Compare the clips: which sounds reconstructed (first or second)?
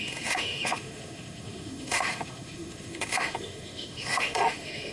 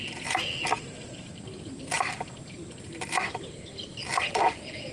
first